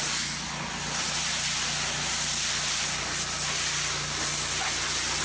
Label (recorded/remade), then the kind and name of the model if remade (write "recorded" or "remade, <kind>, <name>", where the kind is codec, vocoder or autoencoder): recorded